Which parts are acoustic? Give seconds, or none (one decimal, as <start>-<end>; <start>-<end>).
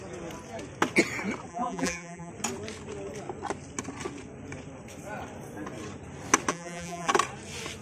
0.0-1.5; 2.3-6.5; 7.1-7.8